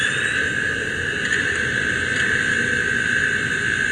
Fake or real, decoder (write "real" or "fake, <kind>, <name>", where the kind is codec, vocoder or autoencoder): real